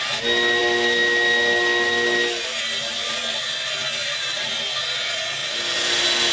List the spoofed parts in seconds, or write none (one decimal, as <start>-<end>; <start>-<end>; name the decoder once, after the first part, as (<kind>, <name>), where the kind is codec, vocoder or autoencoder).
4.0-4.5 (vocoder, BigVGAN v2)